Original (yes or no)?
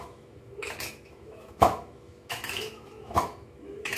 no